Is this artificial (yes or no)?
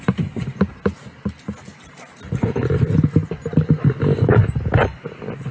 no